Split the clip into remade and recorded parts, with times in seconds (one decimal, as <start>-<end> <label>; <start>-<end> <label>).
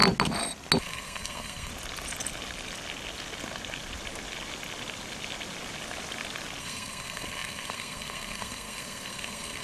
0.0-0.8 recorded; 0.8-1.7 remade; 1.7-6.6 recorded; 6.6-9.6 remade